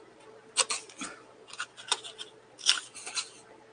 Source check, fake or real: real